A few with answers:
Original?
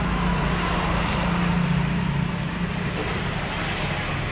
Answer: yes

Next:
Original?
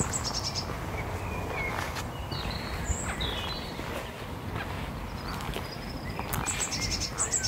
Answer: yes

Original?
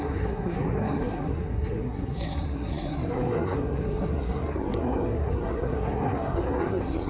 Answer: no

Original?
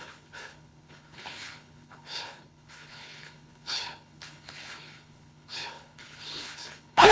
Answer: no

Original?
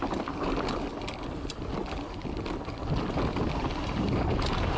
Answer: yes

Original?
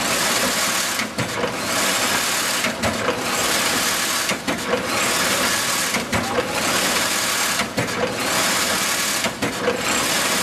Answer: yes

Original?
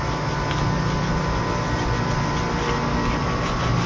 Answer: yes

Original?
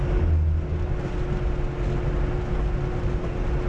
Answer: yes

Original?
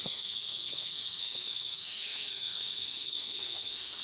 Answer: no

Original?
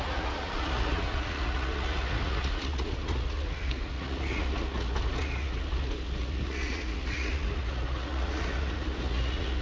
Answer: no